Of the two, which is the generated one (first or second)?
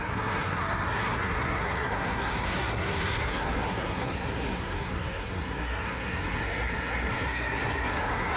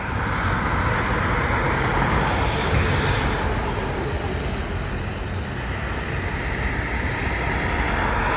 first